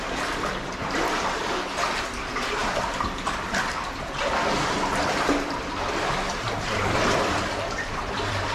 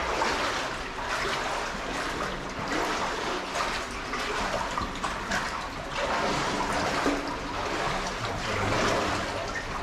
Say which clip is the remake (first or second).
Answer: first